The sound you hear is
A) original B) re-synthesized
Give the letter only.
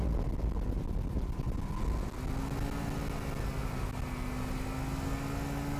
A